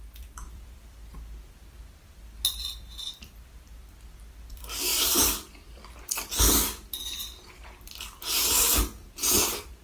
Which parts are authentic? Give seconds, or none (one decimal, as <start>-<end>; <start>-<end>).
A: none